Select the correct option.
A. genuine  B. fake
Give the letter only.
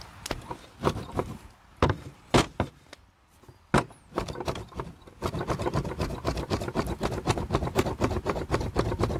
A